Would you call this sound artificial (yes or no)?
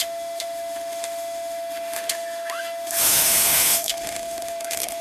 yes